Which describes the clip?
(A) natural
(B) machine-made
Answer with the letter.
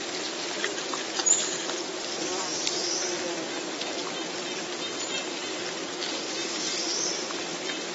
A